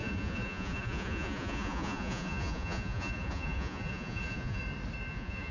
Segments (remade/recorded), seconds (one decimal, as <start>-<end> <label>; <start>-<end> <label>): 0.0-4.6 remade; 4.6-5.1 recorded; 5.1-5.5 remade